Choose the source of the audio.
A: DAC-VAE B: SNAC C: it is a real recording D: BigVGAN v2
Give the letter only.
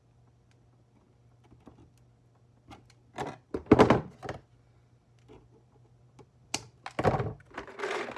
C